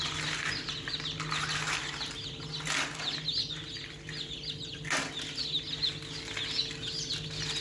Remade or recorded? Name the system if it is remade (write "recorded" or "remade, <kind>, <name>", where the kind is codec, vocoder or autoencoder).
recorded